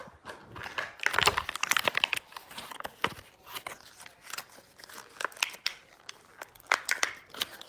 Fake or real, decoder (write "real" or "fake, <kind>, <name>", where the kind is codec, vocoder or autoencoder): real